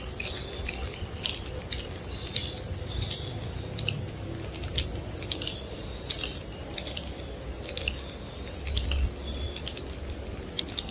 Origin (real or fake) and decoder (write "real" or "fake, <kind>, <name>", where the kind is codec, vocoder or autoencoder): real